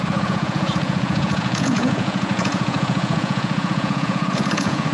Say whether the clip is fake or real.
fake